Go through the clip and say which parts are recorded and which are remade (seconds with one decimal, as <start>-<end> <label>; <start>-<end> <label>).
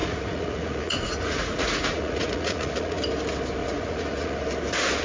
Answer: 0.0-3.0 remade; 3.0-3.6 recorded; 3.6-4.4 remade; 4.4-5.0 recorded